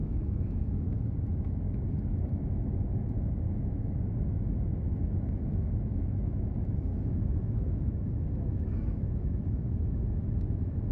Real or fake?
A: fake